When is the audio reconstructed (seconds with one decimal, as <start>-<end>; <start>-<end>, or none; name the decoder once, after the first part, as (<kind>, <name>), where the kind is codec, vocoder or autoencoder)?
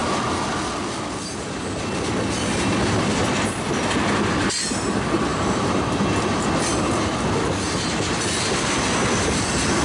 none